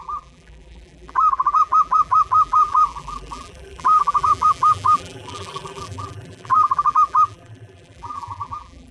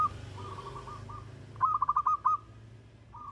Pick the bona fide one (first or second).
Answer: second